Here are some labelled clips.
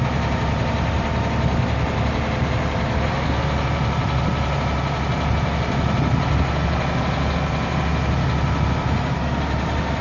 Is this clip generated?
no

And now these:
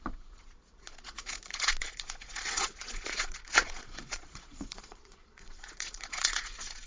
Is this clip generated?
yes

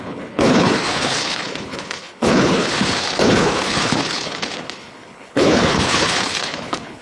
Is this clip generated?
yes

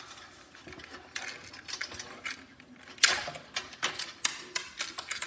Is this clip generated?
no